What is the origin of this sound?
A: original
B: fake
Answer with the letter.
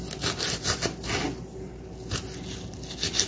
A